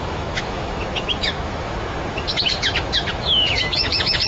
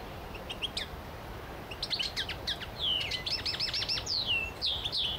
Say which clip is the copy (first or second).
first